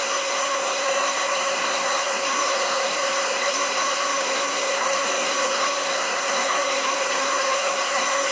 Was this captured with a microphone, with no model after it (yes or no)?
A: no